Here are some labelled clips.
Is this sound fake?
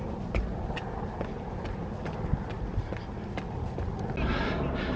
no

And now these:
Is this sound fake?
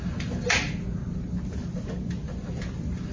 no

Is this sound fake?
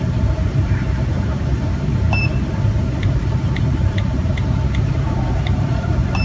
yes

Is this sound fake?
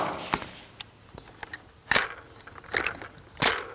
no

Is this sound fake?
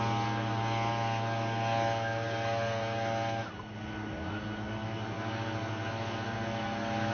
no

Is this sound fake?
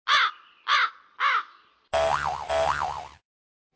no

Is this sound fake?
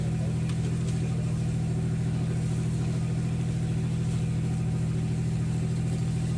no